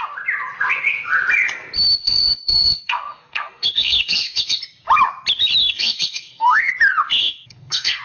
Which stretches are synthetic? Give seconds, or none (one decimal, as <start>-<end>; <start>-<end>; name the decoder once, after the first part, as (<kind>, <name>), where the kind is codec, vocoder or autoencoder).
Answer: 2.0-4.6 (codec, SNAC); 5.6-6.7; 7.2-8.0